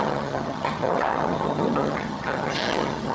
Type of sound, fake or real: fake